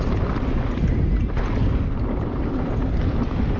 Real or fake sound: fake